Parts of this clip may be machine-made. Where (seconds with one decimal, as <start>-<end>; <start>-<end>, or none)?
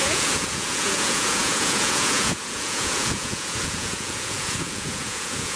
0.0-5.6